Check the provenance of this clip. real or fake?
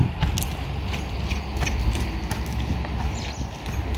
real